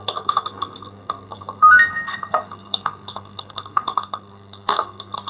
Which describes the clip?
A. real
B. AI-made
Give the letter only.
B